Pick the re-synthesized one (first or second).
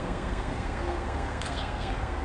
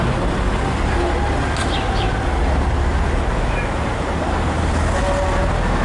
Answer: first